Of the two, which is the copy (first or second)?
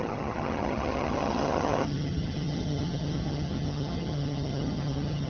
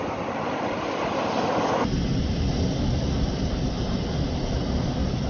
first